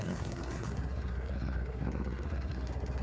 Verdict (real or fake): fake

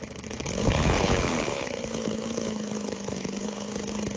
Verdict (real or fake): fake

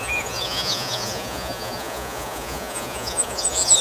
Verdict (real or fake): fake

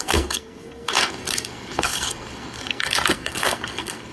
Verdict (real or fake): fake